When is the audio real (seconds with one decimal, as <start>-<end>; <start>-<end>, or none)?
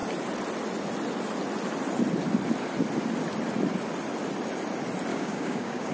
0.0-5.1